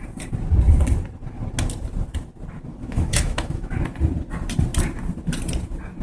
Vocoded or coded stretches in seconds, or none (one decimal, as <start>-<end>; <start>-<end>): 2.7-3.7